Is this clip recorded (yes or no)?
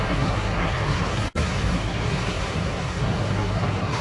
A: no